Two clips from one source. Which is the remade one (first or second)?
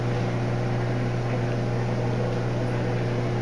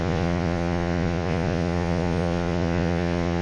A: second